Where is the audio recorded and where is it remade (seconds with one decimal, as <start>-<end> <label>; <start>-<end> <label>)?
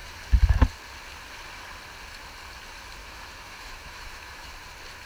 0.0-3.0 recorded; 3.0-4.5 remade; 4.5-5.1 recorded